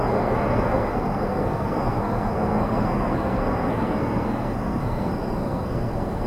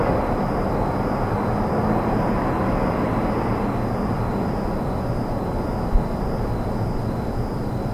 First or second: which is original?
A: second